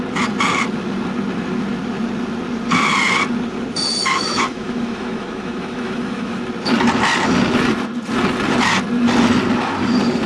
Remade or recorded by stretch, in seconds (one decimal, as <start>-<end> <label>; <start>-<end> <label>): 0.0-4.0 recorded; 4.0-6.4 remade; 6.4-10.3 recorded